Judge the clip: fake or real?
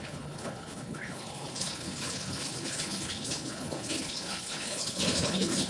fake